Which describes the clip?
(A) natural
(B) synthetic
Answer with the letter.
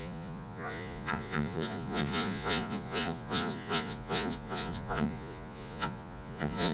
B